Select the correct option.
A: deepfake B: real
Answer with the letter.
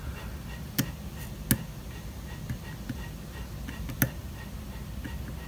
B